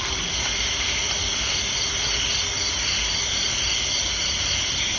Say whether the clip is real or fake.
real